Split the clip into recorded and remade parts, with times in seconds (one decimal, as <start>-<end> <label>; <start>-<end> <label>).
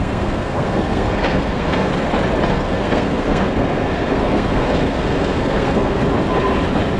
0.0-1.9 remade; 1.9-2.5 recorded; 2.5-6.0 remade; 6.0-7.0 recorded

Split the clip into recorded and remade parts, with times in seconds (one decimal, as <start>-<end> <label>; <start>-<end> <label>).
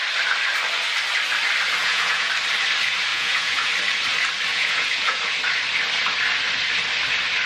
0.0-1.8 recorded; 1.8-2.3 remade; 2.3-3.1 recorded; 3.1-3.7 remade; 3.7-4.5 recorded; 4.5-5.2 remade; 5.2-7.5 recorded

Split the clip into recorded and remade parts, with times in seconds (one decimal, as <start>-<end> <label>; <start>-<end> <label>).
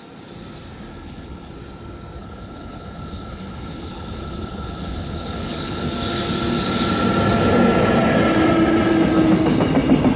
0.0-0.9 recorded; 0.9-1.5 remade; 1.5-2.2 recorded; 2.2-5.8 remade; 5.8-10.2 recorded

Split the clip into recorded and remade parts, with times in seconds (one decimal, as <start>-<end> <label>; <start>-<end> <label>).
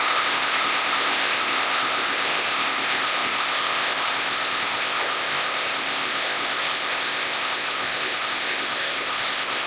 0.0-9.7 remade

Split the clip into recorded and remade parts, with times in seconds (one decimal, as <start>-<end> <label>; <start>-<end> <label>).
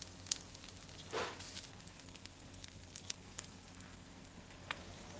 0.0-1.7 recorded; 1.7-4.8 remade; 4.8-5.2 recorded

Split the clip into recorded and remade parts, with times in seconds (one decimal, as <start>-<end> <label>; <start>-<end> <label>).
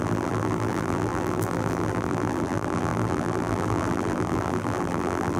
0.0-5.4 remade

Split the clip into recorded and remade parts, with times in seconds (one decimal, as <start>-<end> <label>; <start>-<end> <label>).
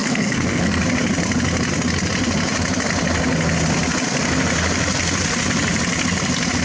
0.0-0.8 remade; 0.8-6.6 recorded